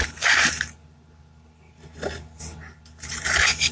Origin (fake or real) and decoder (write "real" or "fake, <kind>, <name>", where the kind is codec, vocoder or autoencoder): real